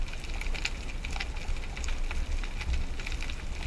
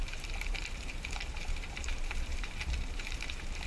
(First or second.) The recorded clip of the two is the first